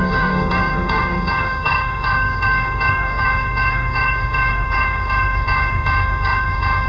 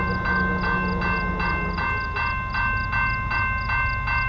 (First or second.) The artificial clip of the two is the first